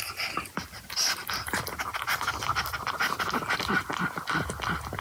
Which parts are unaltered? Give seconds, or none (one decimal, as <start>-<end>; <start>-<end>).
0.0-5.0